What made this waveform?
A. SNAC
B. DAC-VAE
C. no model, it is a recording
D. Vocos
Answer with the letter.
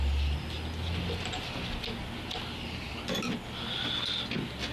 C